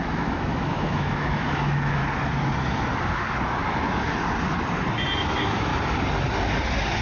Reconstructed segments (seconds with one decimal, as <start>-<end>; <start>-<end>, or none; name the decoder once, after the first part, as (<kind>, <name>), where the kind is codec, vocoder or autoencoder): 0.0-2.0 (autoencoder, DAC-VAE); 5.2-5.7